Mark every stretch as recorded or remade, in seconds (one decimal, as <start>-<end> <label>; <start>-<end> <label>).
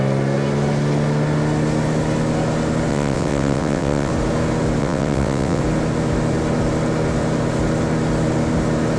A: 0.0-2.9 recorded; 2.9-4.1 remade; 4.1-4.8 recorded; 4.8-5.6 remade; 5.6-9.0 recorded